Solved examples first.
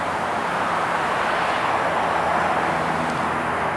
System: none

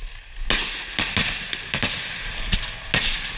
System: none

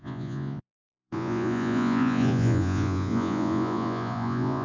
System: vocoder, Vocos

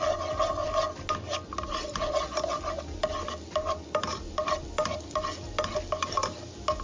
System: none